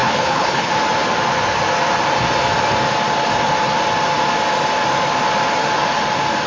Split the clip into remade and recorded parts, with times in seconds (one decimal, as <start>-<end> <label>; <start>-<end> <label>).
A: 0.0-0.7 remade; 0.7-6.5 recorded